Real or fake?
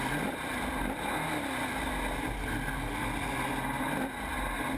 real